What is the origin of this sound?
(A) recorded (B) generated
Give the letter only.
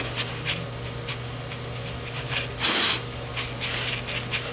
A